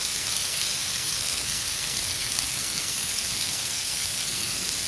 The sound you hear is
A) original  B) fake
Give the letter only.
B